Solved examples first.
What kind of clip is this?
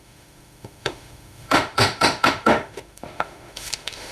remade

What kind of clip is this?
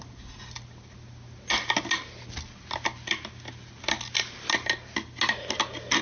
recorded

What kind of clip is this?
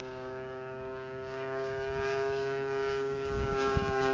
remade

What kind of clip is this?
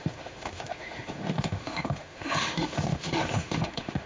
remade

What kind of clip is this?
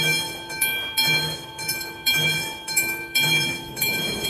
remade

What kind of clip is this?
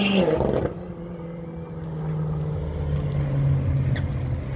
recorded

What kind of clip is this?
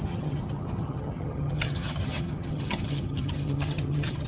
remade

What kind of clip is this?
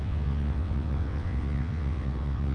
remade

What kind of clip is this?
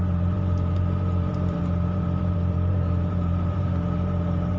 remade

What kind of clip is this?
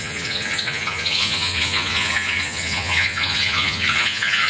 remade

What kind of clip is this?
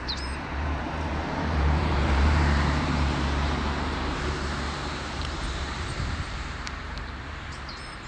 remade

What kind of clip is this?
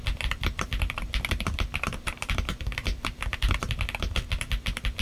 remade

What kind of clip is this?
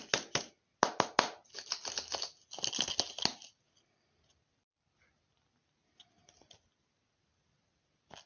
recorded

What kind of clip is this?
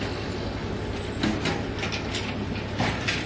recorded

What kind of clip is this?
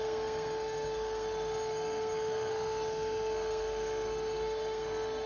remade